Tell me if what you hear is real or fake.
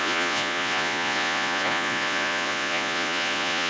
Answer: fake